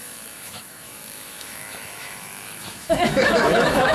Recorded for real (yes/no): no